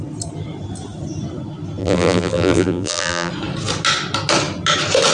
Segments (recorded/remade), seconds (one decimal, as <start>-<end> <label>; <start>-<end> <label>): 0.0-1.8 recorded; 1.8-3.3 remade; 3.3-5.1 recorded